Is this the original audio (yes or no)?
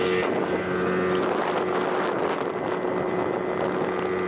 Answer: yes